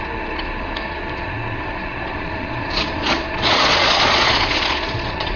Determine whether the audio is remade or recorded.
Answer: remade